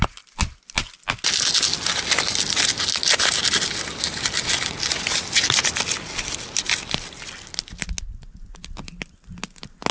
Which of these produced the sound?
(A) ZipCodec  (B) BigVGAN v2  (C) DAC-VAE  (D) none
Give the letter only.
D